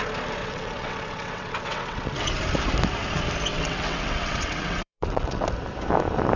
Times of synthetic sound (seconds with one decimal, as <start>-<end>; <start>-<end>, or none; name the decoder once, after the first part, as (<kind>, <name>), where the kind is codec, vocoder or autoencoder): 0.4-2.4 (vocoder, WaveNeXt); 3.5-5.5